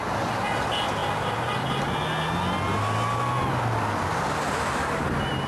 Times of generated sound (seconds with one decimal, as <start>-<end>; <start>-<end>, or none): none